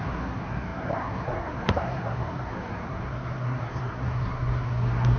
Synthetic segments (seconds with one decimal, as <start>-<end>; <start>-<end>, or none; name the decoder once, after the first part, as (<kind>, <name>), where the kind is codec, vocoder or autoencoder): 0.0-5.2 (codec, SNAC)